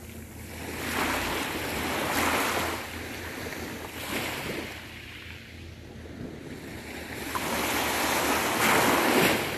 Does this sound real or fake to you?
real